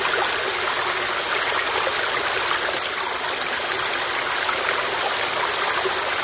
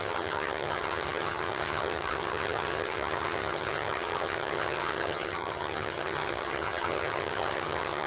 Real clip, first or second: first